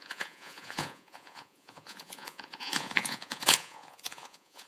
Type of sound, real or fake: fake